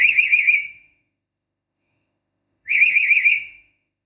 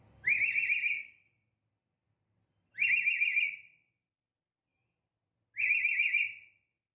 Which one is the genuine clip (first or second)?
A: second